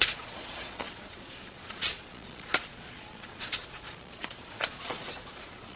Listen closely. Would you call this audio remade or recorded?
remade